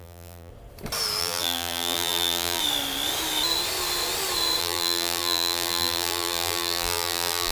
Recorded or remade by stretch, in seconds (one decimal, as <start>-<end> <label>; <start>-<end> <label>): 0.0-0.5 remade; 0.5-1.2 recorded; 1.2-2.6 remade; 2.6-4.6 recorded; 4.6-7.5 remade